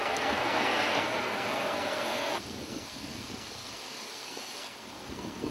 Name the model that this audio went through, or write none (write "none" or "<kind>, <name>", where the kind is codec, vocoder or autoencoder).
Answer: codec, SNAC